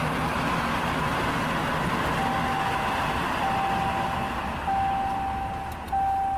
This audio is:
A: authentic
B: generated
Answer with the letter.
A